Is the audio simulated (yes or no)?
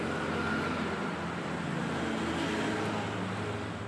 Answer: no